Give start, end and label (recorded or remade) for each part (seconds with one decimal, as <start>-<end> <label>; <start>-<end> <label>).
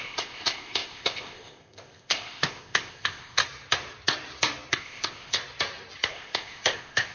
0.0-3.4 remade; 3.4-4.7 recorded; 4.7-5.4 remade; 5.4-6.1 recorded; 6.1-7.1 remade